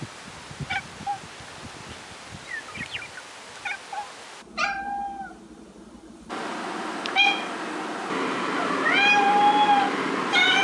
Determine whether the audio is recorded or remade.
recorded